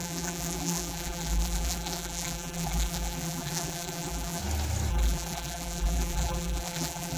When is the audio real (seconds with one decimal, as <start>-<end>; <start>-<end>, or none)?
4.4-4.9